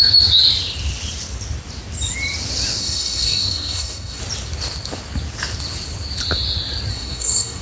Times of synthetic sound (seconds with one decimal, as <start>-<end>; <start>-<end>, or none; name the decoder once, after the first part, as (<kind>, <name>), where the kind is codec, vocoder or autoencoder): 2.8-4.2 (codec, SNAC); 6.9-7.6

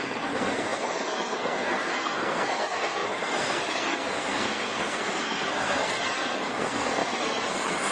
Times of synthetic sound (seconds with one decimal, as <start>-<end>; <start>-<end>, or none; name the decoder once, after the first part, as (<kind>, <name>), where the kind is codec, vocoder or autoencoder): 0.0-7.9 (codec, SNAC)

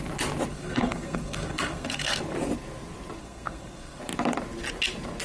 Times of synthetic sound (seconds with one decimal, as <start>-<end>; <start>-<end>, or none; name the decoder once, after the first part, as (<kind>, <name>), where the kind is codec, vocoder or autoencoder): 0.5-2.2 (codec, SNAC); 3.2-4.0

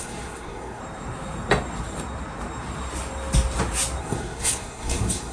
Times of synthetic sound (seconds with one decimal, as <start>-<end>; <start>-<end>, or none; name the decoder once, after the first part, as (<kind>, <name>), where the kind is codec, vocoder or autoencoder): 0.0-0.8 (codec, SNAC); 4.0-5.3

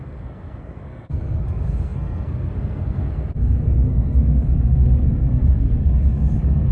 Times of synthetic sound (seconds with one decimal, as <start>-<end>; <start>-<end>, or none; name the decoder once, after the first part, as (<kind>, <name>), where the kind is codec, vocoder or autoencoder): 0.0-6.7 (codec, SNAC)

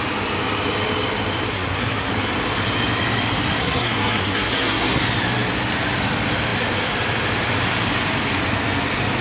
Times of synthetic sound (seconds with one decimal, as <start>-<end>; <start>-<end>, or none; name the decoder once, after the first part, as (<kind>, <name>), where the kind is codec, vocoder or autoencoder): 1.5-2.1 (codec, SNAC); 3.6-5.0

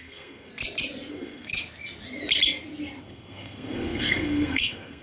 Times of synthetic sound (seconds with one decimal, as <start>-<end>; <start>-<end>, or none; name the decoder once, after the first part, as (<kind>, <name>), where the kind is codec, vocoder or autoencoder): 0.0-0.5 (codec, SNAC); 1.1-1.5; 3.0-5.0